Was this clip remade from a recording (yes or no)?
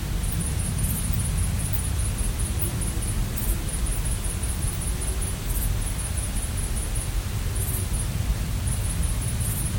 no